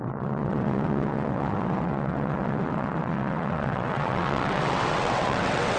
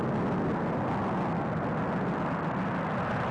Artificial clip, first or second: first